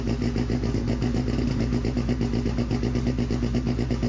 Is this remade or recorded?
recorded